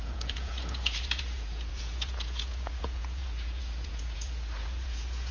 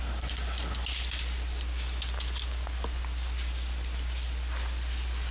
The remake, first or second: first